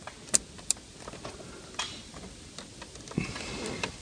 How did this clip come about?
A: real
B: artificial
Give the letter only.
A